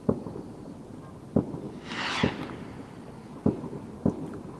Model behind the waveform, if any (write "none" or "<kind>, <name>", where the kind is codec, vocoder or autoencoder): none